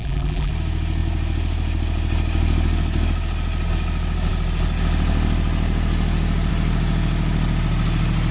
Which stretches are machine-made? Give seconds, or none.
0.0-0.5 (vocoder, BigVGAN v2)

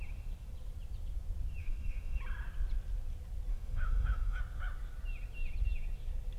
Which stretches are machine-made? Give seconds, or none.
1.6-2.2 (autoencoder, DAC-VAE); 3.5-4.4

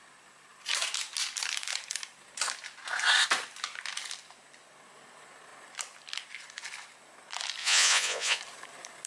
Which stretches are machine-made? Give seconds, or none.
7.6-8.4 (vocoder, Vocos)

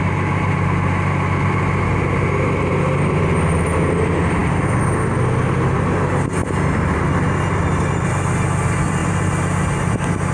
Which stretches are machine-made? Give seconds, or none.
none

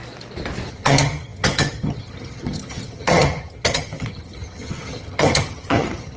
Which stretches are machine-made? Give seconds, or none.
0.7-6.2 (vocoder, HiFi-GAN)

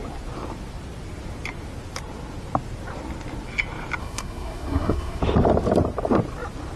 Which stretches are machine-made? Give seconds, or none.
4.0-5.2 (codec, SNAC)

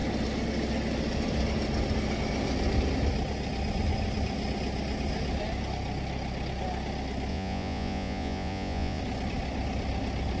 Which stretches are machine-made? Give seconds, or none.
7.3-9.0 (vocoder, Vocos)

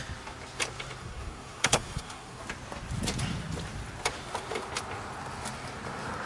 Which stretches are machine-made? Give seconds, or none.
1.0-2.4 (codec, SNAC)